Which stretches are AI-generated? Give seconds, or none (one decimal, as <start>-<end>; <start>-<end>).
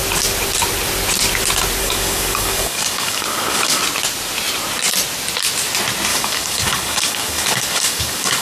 1.8-3.8; 6.1-8.4